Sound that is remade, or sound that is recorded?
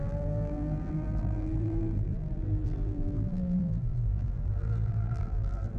remade